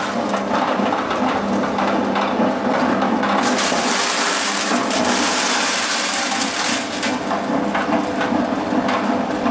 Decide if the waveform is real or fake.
real